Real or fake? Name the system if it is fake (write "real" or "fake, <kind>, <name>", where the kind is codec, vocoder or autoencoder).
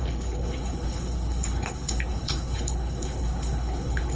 fake, codec, HILCodec